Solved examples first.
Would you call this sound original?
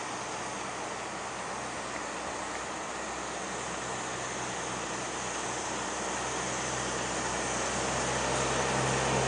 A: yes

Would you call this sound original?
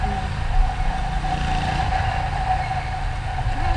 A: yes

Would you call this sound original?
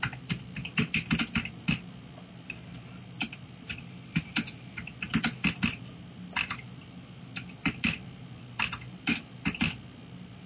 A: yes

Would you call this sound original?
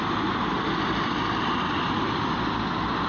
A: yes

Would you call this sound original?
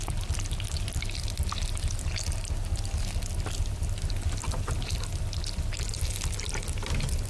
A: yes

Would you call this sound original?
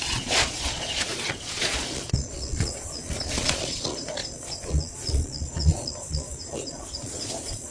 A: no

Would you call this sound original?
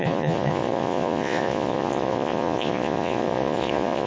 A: no